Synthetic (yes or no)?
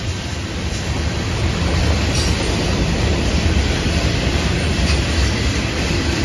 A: yes